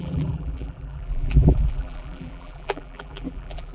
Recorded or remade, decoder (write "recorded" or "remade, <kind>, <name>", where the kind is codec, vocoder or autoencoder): remade, vocoder, BigVGAN v2